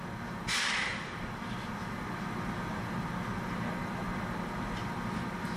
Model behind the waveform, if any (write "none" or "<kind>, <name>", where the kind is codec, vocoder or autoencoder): none